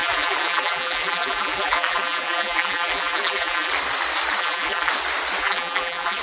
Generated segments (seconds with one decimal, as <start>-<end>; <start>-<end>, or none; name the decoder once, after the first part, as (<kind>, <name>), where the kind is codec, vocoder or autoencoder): 0.0-3.7 (vocoder, BigVGAN v2); 4.4-4.9; 5.4-6.2